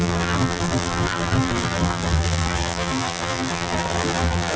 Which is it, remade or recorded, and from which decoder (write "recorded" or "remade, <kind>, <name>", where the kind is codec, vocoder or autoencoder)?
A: remade, vocoder, BigVGAN v2